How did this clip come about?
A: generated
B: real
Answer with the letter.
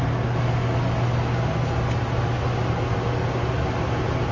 B